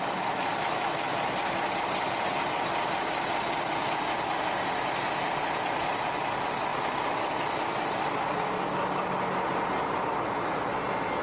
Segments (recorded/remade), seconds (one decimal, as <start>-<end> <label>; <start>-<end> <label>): 0.0-11.2 recorded